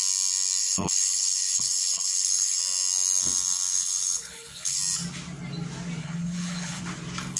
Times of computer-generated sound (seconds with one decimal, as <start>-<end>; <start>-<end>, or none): 0.6-2.6; 3.7-4.8; 6.0-6.8